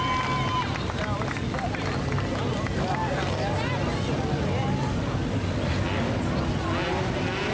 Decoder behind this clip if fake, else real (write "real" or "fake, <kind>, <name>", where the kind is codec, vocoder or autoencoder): real